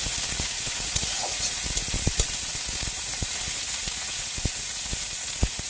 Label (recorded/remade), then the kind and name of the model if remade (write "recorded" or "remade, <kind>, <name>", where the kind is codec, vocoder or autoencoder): remade, vocoder, Vocos